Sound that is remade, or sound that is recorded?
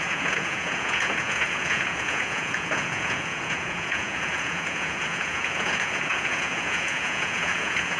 remade